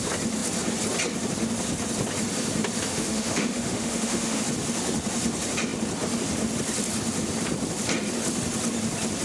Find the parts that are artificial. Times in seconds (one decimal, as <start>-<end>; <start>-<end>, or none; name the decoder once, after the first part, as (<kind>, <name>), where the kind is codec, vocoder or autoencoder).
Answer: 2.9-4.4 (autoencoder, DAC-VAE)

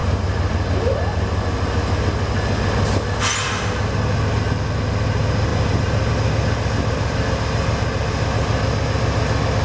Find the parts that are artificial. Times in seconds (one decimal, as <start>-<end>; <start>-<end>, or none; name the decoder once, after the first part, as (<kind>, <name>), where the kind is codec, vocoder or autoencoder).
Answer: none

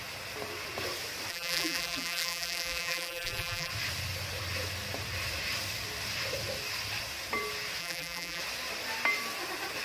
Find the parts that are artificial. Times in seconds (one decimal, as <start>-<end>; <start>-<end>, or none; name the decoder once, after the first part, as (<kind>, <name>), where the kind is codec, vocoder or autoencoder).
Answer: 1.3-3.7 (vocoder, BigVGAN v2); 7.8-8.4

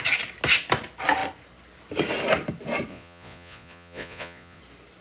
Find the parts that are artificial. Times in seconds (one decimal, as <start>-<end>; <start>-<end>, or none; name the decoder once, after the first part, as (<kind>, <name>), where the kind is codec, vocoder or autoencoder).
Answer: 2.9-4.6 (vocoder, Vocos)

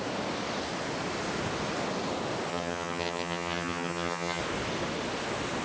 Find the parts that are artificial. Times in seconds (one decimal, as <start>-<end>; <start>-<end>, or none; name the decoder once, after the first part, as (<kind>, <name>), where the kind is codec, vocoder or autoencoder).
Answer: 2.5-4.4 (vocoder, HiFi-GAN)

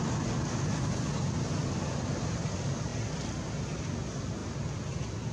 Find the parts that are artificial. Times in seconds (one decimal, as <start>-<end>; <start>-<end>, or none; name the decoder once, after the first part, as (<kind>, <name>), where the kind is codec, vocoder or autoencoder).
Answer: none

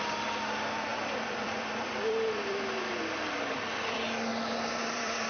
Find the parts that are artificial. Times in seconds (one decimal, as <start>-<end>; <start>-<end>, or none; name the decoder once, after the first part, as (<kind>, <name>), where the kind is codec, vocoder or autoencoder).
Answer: 0.9-3.7 (vocoder, BigVGAN v2); 4.3-5.3

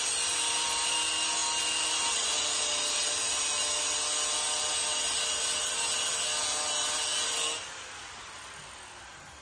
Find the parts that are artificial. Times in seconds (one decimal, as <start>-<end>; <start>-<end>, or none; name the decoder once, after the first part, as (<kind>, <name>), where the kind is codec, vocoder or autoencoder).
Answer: none